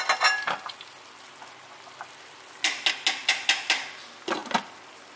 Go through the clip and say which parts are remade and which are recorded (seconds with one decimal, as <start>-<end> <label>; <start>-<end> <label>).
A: 0.0-5.2 recorded